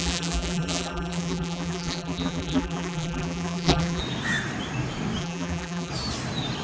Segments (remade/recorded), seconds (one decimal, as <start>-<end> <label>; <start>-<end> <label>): 0.0-4.0 remade; 4.0-5.2 recorded; 5.2-5.9 remade; 5.9-6.6 recorded